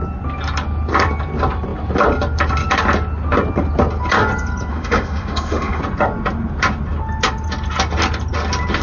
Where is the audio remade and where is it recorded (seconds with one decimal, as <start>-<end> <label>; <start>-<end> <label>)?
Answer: 0.0-4.7 recorded; 4.7-5.8 remade; 5.8-8.8 recorded